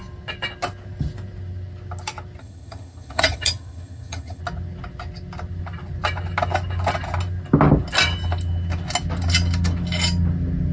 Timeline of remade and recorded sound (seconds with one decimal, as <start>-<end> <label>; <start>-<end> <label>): 0.0-2.4 recorded; 2.4-4.4 remade; 4.4-10.7 recorded